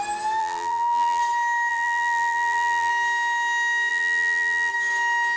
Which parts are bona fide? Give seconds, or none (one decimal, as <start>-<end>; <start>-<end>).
0.0-0.4; 1.2-1.7; 2.9-3.9; 4.7-5.4